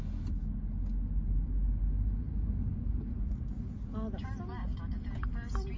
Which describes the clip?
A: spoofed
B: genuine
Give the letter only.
B